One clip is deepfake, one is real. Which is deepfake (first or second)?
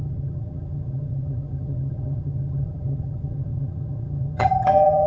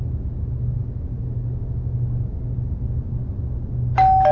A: first